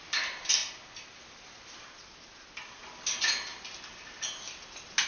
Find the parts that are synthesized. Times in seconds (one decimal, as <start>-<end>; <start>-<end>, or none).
none